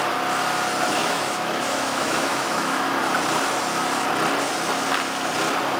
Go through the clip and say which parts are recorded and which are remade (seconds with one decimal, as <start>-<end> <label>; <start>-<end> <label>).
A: 0.0-1.0 recorded; 1.0-3.0 remade; 3.0-5.8 recorded